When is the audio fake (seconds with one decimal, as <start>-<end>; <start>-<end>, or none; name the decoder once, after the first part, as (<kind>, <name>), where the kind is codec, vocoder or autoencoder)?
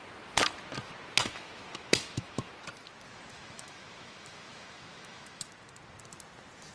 1.2-2.5 (autoencoder, DAC-VAE); 3.3-5.5